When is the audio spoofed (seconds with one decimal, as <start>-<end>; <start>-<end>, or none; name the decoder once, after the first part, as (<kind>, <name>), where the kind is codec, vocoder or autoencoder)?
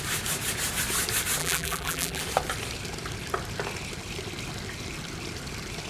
1.4-2.2 (vocoder, BigVGAN v2)